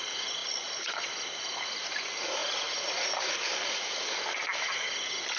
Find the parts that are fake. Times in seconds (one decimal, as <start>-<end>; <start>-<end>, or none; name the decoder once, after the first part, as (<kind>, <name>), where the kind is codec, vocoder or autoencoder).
0.4-1.1 (vocoder, Vocos)

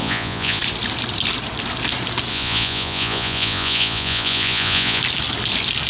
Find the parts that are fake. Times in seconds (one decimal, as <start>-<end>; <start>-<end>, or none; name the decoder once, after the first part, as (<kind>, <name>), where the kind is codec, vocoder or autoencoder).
0.0-0.6 (vocoder, Vocos); 2.3-5.0

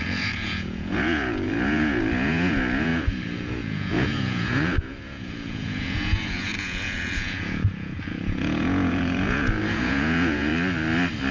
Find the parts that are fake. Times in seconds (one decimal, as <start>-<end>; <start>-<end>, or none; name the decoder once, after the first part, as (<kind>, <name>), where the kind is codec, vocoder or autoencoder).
0.0-10.5 (vocoder, Vocos)